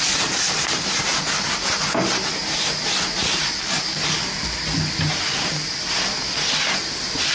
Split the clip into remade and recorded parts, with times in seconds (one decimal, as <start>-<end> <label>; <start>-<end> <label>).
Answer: 0.0-7.3 recorded